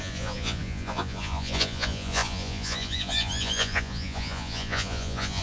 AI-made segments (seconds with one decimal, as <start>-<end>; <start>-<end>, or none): 0.0-5.4